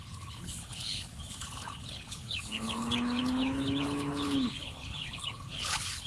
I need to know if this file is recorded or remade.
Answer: remade